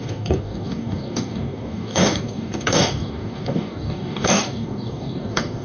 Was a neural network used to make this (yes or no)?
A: yes